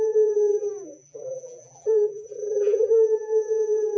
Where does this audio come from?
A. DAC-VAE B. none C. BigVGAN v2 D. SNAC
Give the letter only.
C